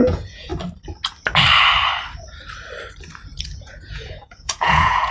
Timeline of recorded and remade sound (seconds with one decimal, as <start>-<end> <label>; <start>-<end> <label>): 0.0-0.5 remade; 0.5-3.6 recorded; 3.6-5.1 remade